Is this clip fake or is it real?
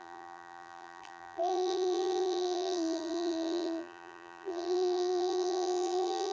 fake